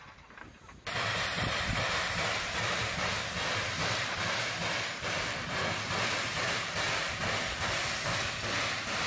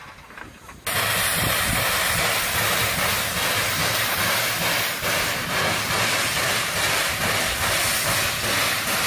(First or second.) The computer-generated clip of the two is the first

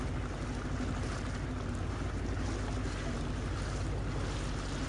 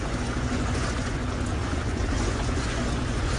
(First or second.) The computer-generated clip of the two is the second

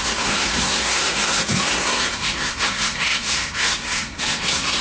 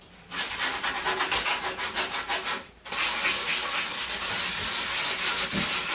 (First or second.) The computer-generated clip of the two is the first